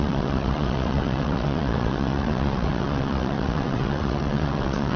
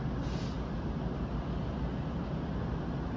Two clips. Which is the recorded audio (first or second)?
second